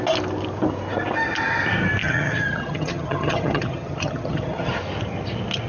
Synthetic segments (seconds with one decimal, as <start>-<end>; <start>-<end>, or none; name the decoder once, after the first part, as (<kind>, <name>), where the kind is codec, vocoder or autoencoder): 2.0-4.7 (vocoder, HiFi-GAN)